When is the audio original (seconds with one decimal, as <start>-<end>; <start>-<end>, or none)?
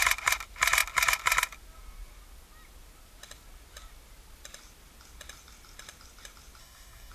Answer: 0.0-6.6